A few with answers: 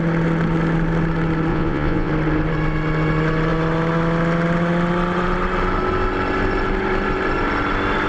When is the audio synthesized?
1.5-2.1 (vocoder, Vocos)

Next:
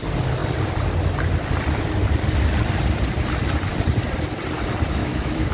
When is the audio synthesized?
5.0-5.5 (autoencoder, DAC-VAE)

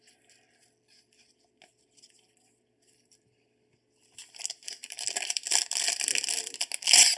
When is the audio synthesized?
4.2-5.6 (vocoder, BigVGAN v2)

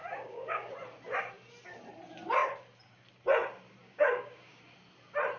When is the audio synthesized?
0.0-0.7 (codec, DAC); 3.8-4.6

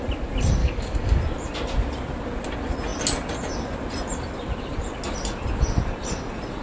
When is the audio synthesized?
0.6-1.2 (codec, DAC)

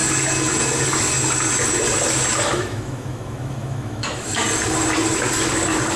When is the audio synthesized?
2.5-4.4 (autoencoder, DAC-VAE)

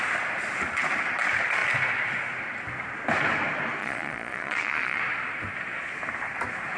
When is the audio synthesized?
3.8-5.0 (vocoder, Vocos)